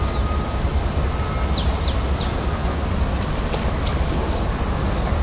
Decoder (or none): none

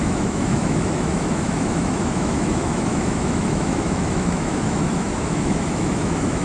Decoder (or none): autoencoder, DAC-VAE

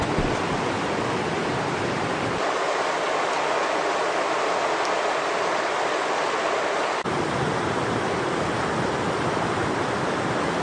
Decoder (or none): none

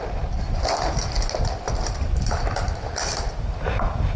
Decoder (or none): none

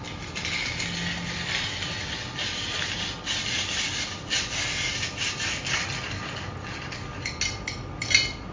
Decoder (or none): none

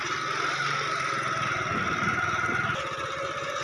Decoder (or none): none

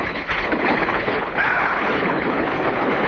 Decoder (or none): codec, HILCodec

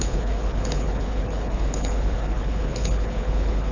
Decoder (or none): codec, HILCodec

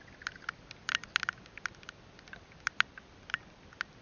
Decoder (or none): none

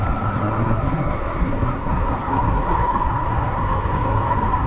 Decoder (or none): codec, SNAC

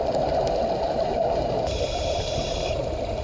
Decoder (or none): none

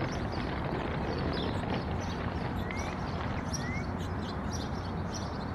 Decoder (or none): none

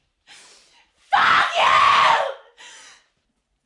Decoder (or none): none